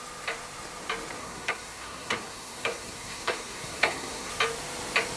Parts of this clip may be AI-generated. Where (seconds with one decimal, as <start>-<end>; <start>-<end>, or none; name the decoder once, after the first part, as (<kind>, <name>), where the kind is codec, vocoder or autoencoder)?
1.2-4.3 (codec, SNAC)

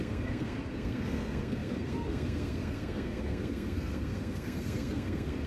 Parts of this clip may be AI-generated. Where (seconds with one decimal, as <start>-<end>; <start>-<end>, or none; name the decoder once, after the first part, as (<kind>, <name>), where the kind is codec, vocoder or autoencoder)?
0.0-5.5 (codec, SNAC)

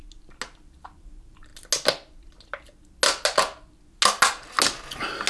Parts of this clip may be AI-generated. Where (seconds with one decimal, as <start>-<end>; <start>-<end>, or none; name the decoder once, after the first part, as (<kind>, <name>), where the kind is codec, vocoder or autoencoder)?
none